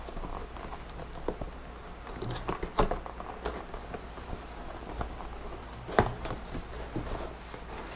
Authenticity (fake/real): real